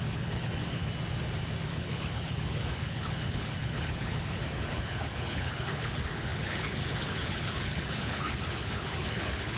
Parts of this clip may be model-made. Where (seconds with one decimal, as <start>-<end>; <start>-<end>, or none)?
0.0-0.8; 1.7-9.6